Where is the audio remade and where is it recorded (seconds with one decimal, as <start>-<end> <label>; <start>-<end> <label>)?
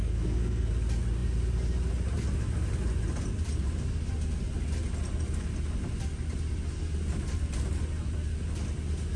0.0-0.7 remade; 0.7-9.2 recorded